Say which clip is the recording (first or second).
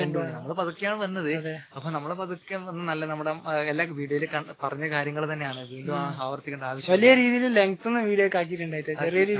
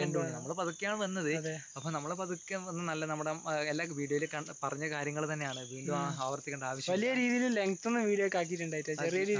second